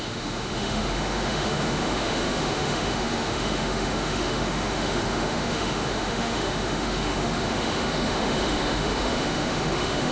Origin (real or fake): fake